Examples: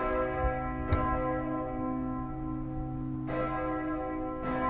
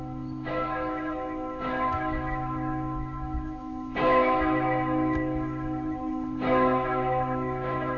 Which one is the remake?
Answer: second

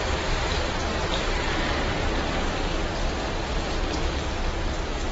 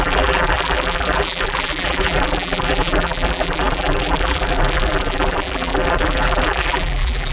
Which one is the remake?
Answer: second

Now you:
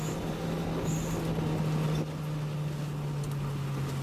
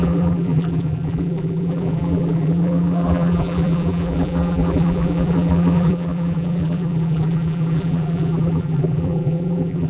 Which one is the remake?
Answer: second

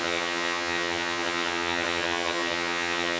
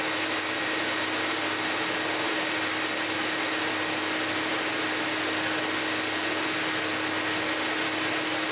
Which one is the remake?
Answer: first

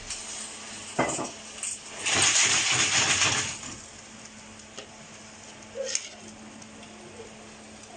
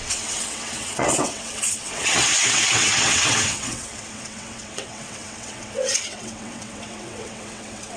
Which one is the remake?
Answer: second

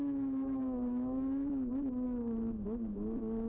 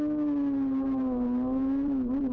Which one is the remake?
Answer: first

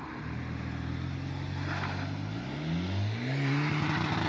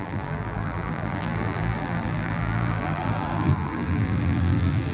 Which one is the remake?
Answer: second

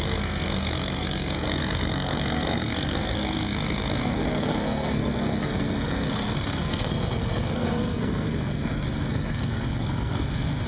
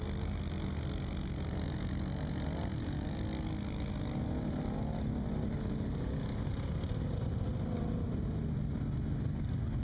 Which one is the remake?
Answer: first